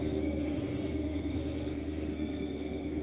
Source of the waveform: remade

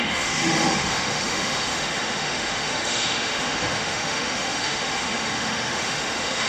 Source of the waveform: remade